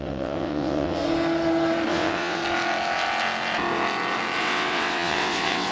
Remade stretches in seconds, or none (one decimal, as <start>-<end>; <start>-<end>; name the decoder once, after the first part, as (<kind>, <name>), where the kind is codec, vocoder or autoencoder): 0.0-1.0 (vocoder, WaveNeXt); 1.9-2.4; 4.4-5.7